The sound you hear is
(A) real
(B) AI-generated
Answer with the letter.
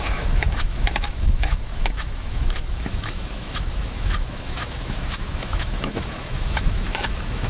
B